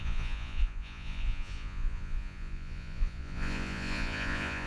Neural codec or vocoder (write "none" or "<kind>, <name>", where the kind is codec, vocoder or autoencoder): vocoder, Vocos